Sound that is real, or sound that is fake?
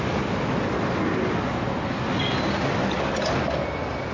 real